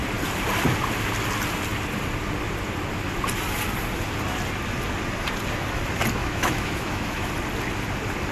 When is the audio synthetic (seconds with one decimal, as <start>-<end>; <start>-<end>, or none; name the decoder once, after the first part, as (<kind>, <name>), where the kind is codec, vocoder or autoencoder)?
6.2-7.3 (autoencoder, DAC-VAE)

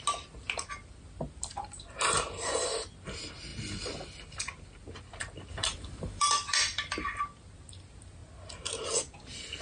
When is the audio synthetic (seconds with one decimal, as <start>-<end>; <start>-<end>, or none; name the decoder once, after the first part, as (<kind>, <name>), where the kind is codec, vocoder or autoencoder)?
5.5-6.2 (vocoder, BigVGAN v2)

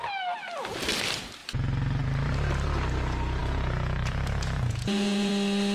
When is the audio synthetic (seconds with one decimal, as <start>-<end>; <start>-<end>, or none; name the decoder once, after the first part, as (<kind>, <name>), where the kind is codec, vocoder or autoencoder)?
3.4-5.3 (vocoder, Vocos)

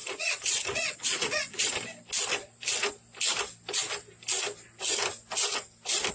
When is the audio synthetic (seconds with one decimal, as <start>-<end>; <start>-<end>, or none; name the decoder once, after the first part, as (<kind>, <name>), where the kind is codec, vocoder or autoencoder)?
0.0-1.7 (vocoder, Vocos)

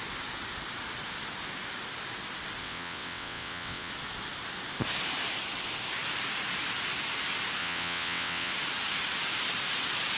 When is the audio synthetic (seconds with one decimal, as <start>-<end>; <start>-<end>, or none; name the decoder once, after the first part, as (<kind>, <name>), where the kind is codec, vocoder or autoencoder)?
2.6-3.9 (vocoder, WaveNeXt); 7.6-8.5

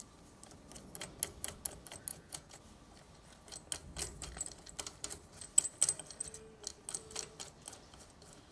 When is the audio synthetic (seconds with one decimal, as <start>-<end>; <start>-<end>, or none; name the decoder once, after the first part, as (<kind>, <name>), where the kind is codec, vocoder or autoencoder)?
2.1-2.6 (vocoder, Vocos)